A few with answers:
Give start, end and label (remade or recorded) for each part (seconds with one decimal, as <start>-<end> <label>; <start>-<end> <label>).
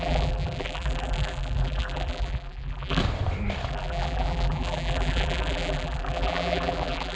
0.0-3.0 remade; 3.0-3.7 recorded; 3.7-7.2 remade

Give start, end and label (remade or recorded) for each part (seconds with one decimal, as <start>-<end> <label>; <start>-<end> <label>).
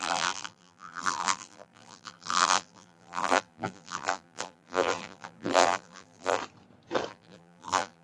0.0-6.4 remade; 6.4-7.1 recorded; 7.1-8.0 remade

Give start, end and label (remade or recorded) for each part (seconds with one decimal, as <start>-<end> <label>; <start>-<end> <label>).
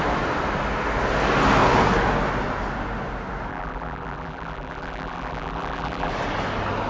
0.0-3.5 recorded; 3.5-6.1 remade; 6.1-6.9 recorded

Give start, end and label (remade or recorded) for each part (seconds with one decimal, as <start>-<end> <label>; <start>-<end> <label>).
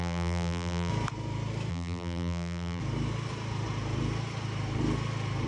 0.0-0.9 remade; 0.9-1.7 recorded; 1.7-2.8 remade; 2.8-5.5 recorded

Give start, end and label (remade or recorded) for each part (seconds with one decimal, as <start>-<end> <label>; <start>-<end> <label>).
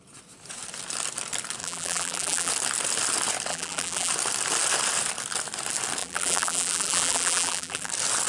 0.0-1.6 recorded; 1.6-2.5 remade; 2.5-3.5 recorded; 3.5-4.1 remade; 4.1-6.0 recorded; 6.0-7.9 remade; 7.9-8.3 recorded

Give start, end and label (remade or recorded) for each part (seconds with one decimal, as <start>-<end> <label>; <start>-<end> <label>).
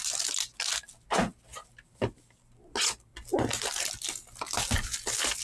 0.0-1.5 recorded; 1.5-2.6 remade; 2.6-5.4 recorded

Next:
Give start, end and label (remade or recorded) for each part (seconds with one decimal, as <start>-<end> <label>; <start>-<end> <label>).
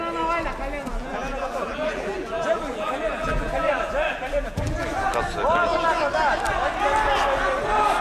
0.0-0.9 recorded; 0.9-4.9 remade; 4.9-8.0 recorded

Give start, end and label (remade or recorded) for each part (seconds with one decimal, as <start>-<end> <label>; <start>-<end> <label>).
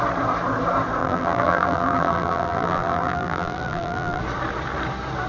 0.0-1.0 recorded; 1.0-4.2 remade; 4.2-5.3 recorded